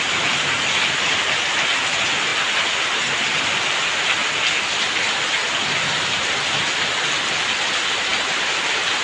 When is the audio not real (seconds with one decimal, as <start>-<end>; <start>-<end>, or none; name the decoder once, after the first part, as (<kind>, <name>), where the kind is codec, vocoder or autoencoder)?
none